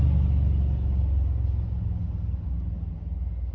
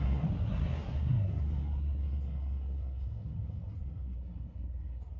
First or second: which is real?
first